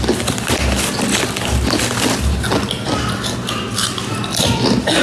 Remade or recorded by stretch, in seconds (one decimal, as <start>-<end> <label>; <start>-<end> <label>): 0.0-5.0 recorded